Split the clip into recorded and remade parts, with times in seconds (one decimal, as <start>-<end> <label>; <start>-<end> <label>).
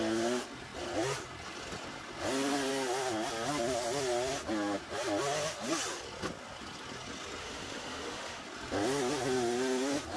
0.0-7.4 recorded; 7.4-8.4 remade; 8.4-10.2 recorded